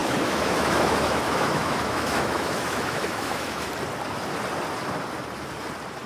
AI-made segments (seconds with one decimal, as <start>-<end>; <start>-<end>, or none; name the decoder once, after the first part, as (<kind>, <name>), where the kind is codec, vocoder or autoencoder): 0.0-3.7 (autoencoder, DAC-VAE)